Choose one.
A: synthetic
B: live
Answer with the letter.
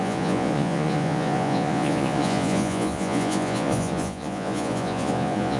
A